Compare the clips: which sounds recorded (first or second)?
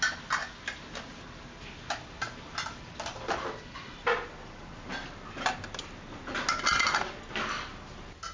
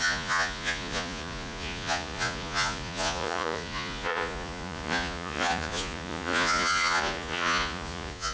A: first